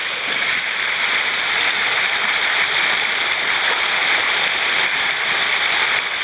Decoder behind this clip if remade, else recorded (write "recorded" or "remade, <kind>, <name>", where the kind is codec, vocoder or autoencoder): recorded